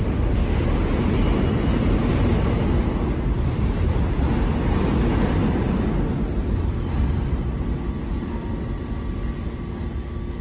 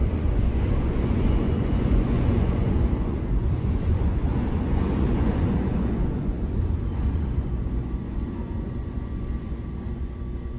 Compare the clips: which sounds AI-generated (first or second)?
second